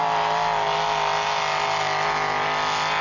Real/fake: real